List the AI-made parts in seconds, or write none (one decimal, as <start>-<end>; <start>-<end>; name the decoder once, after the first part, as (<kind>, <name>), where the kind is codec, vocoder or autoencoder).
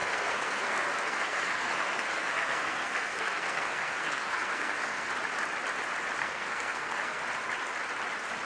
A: 0.0-5.1 (codec, SNAC); 6.2-7.2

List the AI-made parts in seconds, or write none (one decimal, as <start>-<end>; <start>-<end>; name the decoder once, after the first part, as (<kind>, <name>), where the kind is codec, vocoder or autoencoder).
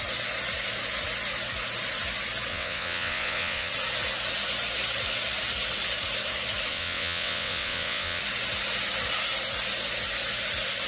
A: 2.5-3.7 (vocoder, WaveNeXt); 6.7-8.2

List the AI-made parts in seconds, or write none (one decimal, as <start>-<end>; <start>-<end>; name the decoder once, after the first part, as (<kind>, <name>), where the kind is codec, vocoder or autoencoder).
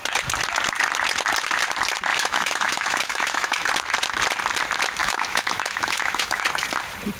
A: 2.1-3.7 (autoencoder, DAC-VAE); 5.0-6.4